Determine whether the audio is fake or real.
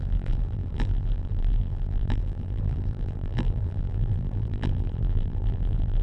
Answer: fake